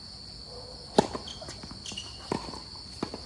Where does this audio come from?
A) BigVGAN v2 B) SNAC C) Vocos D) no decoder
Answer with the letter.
D